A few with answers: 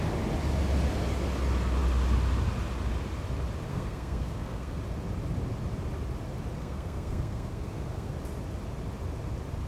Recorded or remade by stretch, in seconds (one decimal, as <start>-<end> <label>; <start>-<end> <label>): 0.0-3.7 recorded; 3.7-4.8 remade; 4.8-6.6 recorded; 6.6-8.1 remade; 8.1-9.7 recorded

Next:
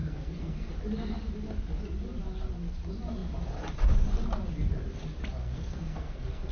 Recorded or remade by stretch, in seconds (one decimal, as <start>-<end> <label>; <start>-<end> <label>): 0.0-0.7 remade; 0.7-5.4 recorded; 5.4-6.5 remade

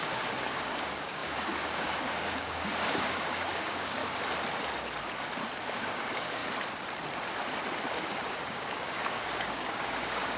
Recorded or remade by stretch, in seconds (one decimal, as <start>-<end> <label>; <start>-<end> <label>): 0.0-4.0 remade; 4.0-5.6 recorded; 5.6-6.4 remade; 6.4-8.0 recorded; 8.0-10.4 remade